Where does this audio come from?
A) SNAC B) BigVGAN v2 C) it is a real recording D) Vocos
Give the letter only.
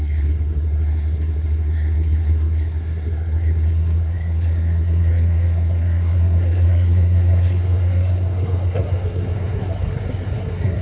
A